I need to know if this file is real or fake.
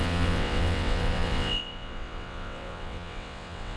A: fake